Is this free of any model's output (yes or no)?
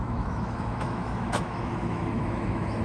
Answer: no